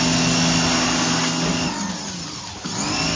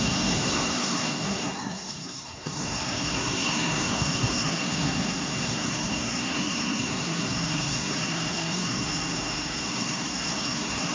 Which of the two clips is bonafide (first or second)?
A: first